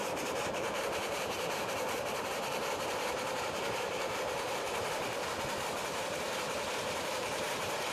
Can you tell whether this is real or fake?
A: fake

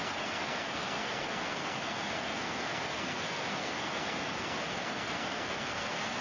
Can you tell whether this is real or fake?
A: fake